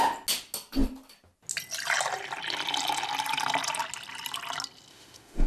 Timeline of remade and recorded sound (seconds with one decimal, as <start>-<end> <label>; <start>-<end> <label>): 0.0-4.9 recorded; 4.9-5.5 remade